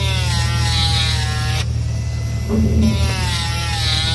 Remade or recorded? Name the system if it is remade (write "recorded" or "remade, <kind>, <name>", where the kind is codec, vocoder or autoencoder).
recorded